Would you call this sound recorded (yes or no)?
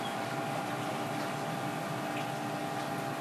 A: yes